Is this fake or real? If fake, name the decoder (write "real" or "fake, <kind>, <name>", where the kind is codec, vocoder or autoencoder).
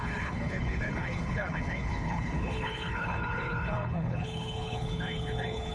fake, codec, HILCodec